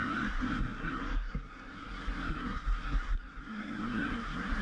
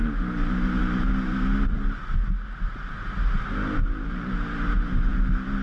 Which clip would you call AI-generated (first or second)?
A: first